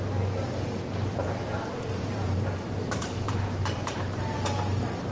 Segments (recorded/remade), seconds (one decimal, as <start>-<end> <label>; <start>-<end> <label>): 0.0-1.1 recorded; 1.1-4.2 remade; 4.2-5.1 recorded